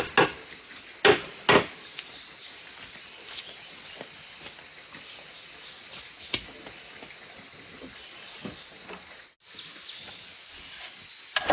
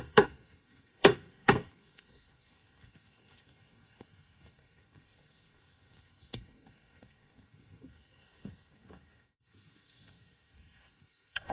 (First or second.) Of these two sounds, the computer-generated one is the second